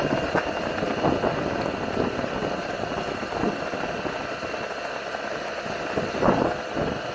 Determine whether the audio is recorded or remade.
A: recorded